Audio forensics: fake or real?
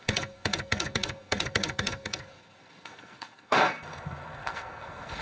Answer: fake